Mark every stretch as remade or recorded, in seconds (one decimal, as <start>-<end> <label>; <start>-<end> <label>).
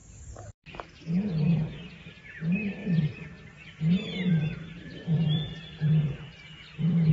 0.0-2.8 recorded; 2.8-3.8 remade; 3.8-4.3 recorded; 4.3-7.1 remade